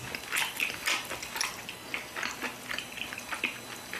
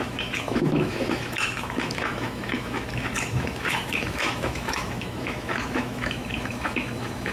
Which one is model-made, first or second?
second